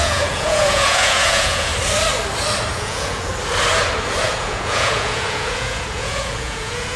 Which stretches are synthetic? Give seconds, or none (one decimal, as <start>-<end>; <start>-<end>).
0.0-1.7; 2.7-3.3; 4.2-7.0